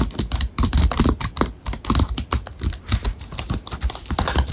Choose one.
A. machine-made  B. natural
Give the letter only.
B